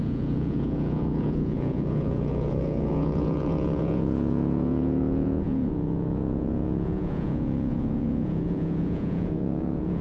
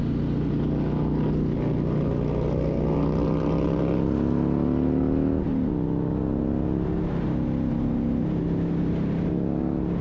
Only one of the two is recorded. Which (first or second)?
second